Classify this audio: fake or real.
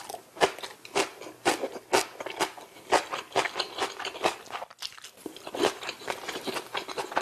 real